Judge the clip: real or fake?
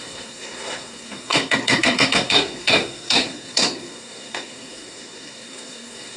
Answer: fake